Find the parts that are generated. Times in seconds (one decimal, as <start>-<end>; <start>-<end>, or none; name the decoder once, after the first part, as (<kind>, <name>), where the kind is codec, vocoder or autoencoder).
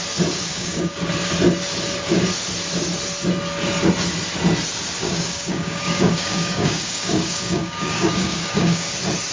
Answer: 0.5-1.0 (codec, DAC); 5.0-8.9